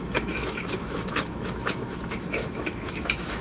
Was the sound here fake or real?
fake